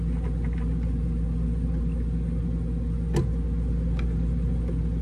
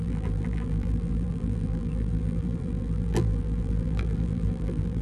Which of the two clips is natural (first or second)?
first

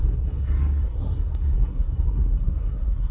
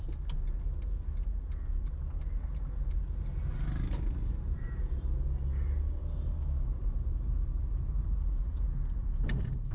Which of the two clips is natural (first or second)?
second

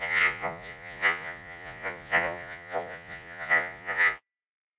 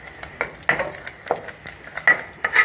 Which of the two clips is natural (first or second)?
second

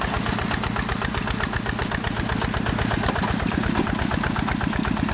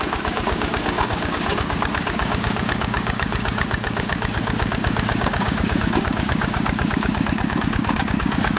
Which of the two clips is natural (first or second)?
first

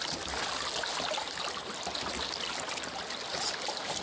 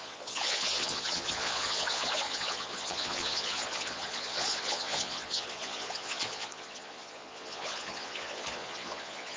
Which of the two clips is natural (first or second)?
first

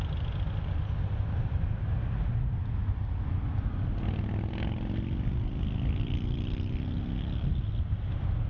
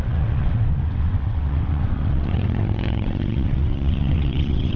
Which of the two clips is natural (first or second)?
first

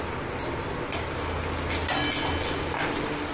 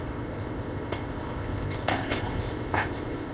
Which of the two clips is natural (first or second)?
first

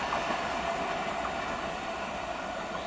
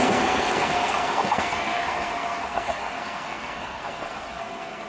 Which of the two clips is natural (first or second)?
first